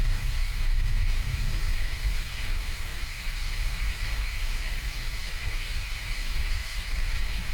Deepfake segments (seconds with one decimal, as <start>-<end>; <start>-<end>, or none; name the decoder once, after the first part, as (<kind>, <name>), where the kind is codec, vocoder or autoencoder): 0.0-7.5 (codec, DAC)